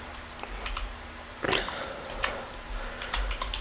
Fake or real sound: real